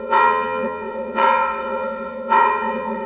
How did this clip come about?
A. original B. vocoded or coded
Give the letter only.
B